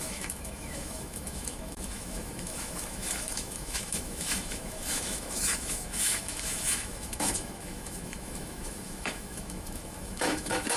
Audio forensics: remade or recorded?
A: remade